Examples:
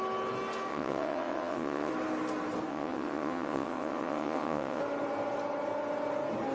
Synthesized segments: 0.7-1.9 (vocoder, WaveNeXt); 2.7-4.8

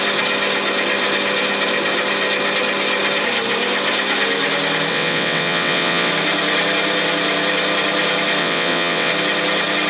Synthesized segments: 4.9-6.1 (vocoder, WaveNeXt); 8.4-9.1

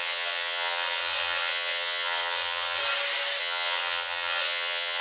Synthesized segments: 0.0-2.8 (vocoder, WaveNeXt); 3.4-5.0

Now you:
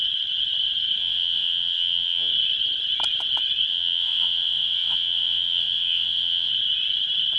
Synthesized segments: 1.0-2.3 (vocoder, WaveNeXt); 3.7-6.5

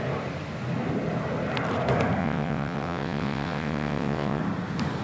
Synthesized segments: 2.2-4.4 (vocoder, WaveNeXt)